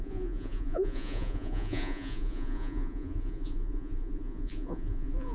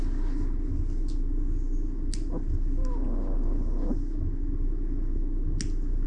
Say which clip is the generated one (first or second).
first